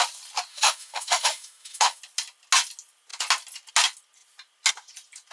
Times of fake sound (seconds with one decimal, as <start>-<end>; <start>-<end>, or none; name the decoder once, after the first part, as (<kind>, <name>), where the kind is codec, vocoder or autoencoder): 0.5-2.0 (autoencoder, DAC-VAE)